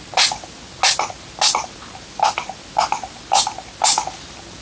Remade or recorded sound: recorded